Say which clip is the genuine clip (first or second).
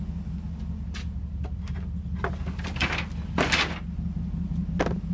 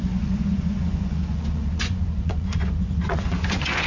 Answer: first